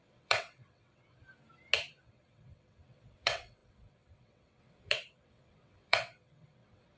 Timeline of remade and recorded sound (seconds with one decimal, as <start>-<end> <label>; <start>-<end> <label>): 0.0-1.2 remade; 1.2-1.9 recorded; 1.9-7.0 remade